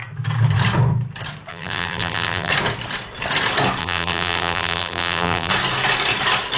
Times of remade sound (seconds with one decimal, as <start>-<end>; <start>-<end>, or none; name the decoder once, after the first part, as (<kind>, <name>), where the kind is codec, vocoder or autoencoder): 1.5-2.5 (vocoder, BigVGAN v2); 3.8-5.5